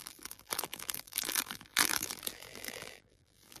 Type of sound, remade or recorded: remade